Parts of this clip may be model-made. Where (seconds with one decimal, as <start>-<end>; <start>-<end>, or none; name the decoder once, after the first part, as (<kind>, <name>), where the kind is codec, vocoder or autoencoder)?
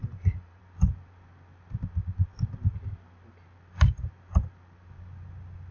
0.0-0.6 (vocoder, BigVGAN v2)